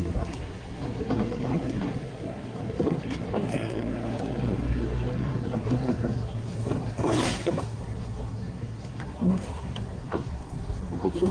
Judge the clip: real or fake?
fake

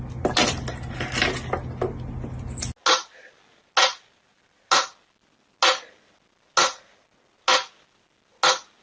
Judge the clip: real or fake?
real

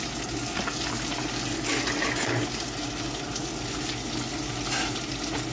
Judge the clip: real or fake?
real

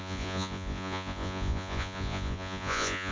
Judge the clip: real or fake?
fake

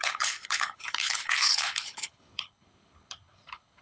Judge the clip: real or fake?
fake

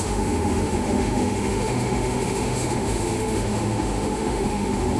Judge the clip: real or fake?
fake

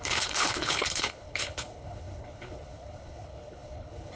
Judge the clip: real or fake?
fake